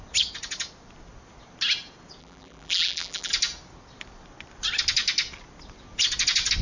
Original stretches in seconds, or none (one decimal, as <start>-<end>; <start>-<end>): 0.0-2.2; 3.3-6.6